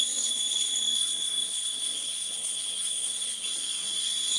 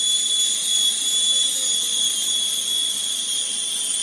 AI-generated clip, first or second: first